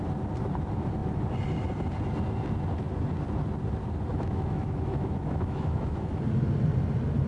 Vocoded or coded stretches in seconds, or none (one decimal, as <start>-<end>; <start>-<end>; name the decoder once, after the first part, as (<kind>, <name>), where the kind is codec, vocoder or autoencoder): 4.1-6.2 (autoencoder, DAC-VAE)